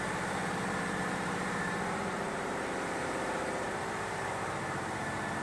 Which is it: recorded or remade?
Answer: remade